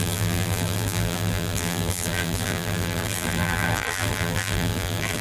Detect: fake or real fake